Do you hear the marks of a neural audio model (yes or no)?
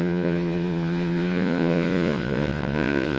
yes